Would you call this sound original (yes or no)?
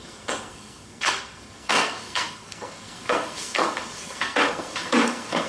no